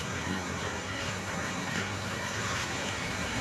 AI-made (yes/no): yes